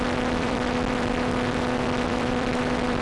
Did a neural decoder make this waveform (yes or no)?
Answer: yes